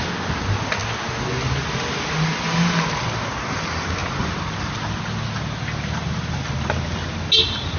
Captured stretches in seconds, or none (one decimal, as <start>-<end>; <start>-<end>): 0.0-7.8